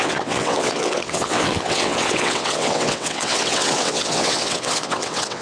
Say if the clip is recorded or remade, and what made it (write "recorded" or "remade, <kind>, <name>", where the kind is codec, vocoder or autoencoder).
remade, vocoder, WaveNeXt